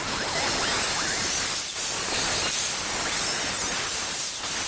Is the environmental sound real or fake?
real